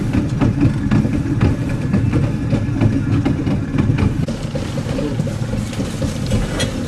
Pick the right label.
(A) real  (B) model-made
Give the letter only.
A